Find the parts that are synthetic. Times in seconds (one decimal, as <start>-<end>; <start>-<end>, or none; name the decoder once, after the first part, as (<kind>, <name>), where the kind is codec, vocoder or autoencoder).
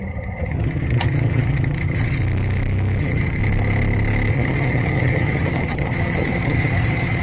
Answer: 0.0-2.2 (vocoder, HiFi-GAN); 3.0-3.4; 4.3-7.2